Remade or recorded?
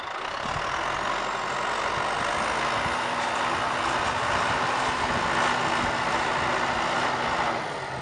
recorded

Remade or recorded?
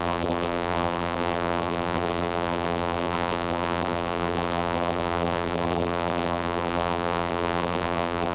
remade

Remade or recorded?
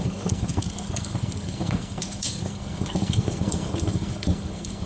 remade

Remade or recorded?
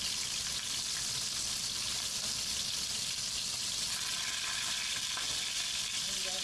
recorded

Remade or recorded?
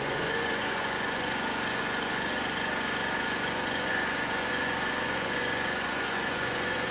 remade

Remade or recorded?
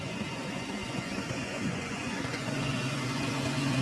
remade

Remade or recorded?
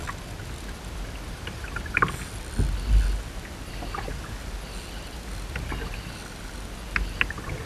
recorded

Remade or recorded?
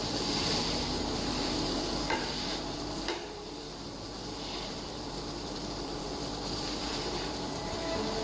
remade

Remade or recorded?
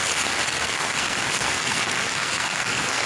remade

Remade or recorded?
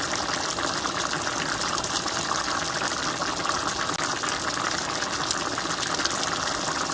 recorded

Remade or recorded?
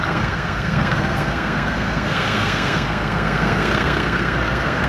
remade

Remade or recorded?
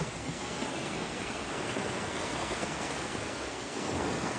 remade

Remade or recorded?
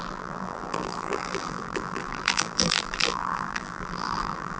remade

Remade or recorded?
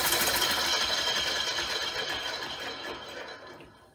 recorded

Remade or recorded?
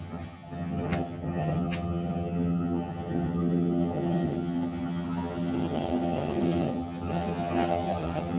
remade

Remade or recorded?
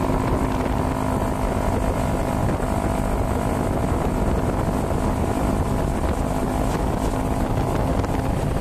recorded